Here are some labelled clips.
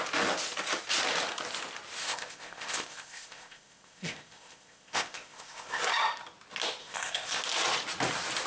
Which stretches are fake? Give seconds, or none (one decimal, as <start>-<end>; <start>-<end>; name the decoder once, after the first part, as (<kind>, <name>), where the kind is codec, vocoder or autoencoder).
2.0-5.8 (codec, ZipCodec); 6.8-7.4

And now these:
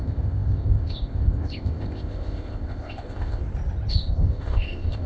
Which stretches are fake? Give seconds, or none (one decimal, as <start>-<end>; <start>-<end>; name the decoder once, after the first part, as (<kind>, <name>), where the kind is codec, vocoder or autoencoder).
0.0-3.4 (codec, ZipCodec); 3.9-5.1

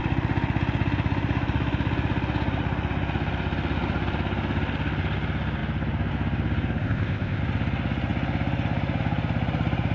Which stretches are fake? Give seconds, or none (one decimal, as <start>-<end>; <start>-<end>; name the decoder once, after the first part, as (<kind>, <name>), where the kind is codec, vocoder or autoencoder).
6.8-7.4 (codec, ZipCodec)